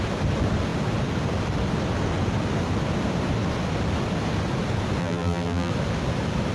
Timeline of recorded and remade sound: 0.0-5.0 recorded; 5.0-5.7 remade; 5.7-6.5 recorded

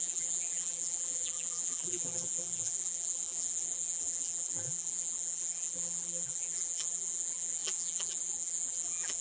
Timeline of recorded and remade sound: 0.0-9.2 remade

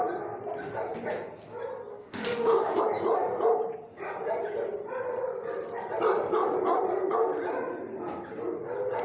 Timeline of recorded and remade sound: 0.0-1.9 recorded; 1.9-2.8 remade; 2.8-9.0 recorded